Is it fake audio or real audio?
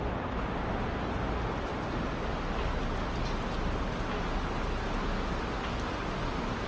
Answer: real